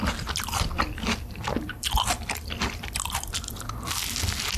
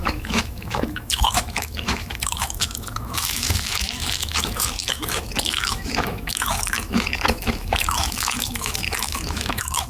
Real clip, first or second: first